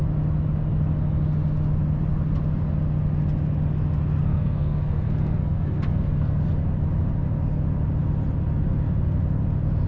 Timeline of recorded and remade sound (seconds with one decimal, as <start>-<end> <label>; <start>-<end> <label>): 0.0-4.2 recorded; 4.2-6.4 remade; 6.4-9.9 recorded

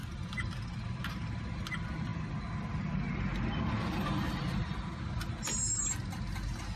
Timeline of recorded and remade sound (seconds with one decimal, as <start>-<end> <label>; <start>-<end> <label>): 0.0-6.8 recorded

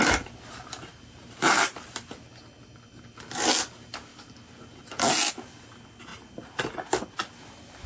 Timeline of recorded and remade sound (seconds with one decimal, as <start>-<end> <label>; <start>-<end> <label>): 0.0-0.8 recorded; 0.8-2.4 remade; 2.4-6.1 recorded; 6.1-6.7 remade; 6.7-7.9 recorded

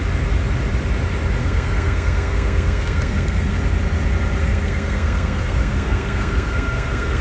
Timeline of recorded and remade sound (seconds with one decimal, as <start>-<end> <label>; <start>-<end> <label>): 0.0-1.4 recorded; 1.4-3.6 remade; 3.6-4.4 recorded; 4.4-7.2 remade